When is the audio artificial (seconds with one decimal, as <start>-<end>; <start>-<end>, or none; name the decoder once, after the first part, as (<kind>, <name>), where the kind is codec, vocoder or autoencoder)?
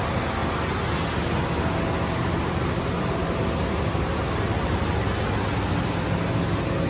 none